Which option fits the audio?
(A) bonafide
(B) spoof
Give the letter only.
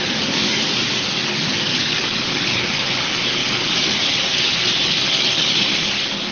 B